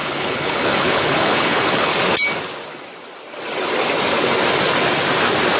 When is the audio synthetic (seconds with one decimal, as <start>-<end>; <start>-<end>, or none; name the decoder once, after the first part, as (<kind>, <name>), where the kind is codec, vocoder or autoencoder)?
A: 0.0-1.9 (codec, HILCodec)

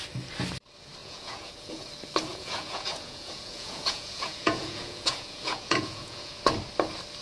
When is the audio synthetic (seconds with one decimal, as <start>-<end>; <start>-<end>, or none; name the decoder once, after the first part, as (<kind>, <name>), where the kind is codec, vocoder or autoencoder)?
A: 1.0-1.8 (vocoder, Vocos); 2.3-6.3

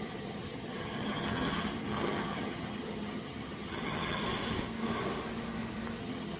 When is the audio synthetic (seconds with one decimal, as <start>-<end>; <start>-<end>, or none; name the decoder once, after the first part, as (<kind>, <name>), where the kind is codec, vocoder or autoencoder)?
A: 0.0-4.2 (vocoder, HiFi-GAN); 6.0-6.4

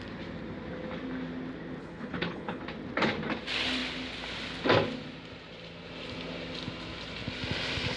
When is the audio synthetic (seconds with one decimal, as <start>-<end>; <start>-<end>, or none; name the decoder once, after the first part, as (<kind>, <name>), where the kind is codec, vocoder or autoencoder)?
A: 1.8-2.6 (codec, HILCodec)

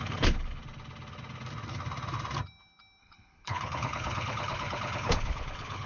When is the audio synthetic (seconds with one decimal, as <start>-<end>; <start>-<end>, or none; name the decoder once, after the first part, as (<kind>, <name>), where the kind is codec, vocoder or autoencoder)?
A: 0.0-0.6 (codec, HILCodec); 3.0-5.9

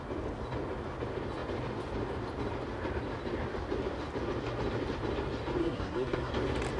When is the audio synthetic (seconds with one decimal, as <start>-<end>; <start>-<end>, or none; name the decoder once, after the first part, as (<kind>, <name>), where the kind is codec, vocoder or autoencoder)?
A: 5.6-6.3 (codec, SNAC)

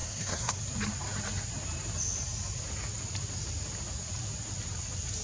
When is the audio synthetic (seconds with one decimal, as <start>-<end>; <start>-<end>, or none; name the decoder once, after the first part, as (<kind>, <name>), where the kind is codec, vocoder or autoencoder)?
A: 0.0-0.6 (codec, SNAC)

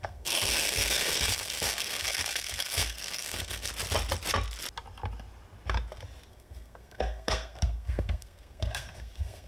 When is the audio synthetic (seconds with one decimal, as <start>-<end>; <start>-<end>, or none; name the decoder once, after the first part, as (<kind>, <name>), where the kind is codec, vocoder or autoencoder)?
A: 0.0-3.7 (codec, SNAC); 6.3-9.5